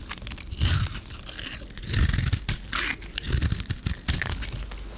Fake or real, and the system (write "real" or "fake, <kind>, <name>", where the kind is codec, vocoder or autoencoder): real